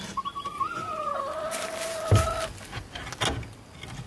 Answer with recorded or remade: recorded